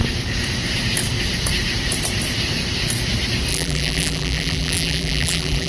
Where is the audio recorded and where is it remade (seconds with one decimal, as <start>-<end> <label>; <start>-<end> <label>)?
0.0-3.5 recorded; 3.5-5.7 remade